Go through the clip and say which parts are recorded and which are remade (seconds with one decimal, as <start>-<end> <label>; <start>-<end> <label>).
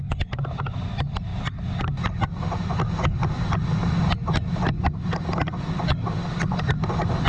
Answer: 0.0-7.3 recorded